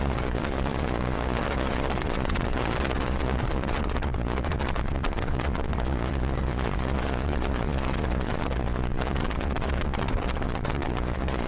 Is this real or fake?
fake